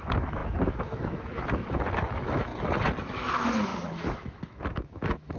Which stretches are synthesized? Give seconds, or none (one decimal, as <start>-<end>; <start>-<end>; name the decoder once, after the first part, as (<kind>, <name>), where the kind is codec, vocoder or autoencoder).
0.0-2.5 (autoencoder, DAC-VAE); 3.0-5.4